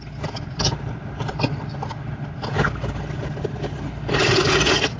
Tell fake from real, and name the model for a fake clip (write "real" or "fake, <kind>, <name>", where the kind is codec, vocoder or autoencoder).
real